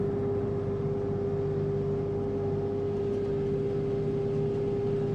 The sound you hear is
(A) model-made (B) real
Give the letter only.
B